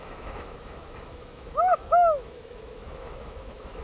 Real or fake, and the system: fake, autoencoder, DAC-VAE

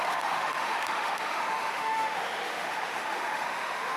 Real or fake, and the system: fake, autoencoder, DAC-VAE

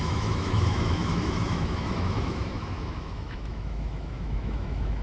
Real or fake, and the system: fake, autoencoder, DAC-VAE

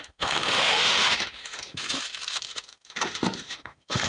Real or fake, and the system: fake, autoencoder, DAC-VAE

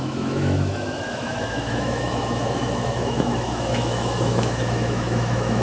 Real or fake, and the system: fake, autoencoder, DAC-VAE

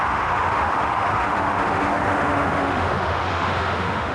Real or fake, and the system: fake, autoencoder, DAC-VAE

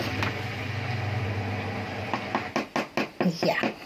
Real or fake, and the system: real